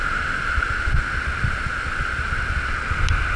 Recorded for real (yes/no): yes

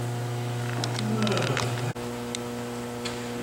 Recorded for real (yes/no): yes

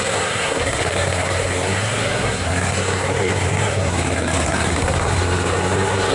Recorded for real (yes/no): no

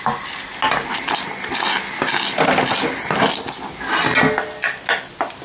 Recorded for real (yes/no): yes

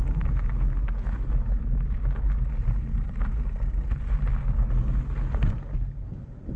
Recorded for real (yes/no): yes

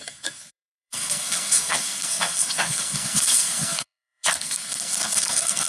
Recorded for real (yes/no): no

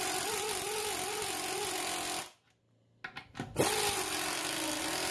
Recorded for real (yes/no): yes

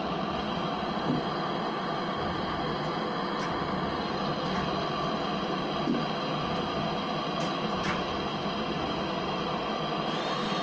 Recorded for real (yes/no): yes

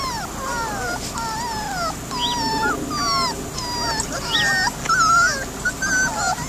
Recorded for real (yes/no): yes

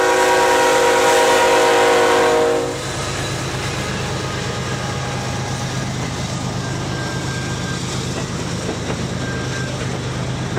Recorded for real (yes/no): yes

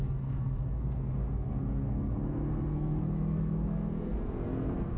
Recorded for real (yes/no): no